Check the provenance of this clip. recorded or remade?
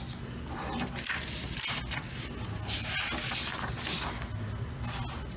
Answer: recorded